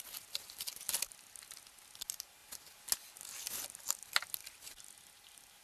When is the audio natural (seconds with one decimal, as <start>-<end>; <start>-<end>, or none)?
0.0-5.6